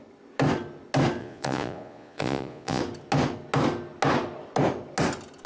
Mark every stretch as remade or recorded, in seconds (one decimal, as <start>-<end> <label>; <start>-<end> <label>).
0.0-1.2 recorded; 1.2-2.8 remade; 2.8-5.5 recorded